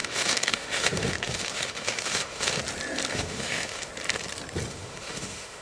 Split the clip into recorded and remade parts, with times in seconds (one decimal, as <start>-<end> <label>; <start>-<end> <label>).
0.0-2.6 remade; 2.6-3.1 recorded; 3.1-3.9 remade; 3.9-4.7 recorded; 4.7-5.6 remade